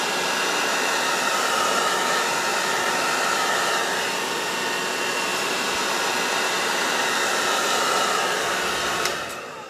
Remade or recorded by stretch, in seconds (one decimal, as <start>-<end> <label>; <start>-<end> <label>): 0.0-5.3 recorded; 5.3-6.9 remade; 6.9-9.7 recorded